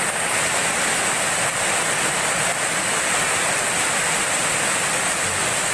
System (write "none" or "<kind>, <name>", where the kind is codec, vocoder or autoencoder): none